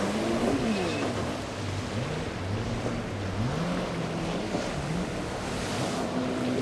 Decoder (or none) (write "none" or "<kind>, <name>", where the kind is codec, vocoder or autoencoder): none